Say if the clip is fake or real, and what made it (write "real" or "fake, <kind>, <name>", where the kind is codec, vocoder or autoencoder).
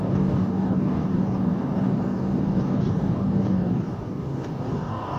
fake, codec, DAC